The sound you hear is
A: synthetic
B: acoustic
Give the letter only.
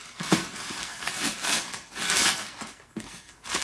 A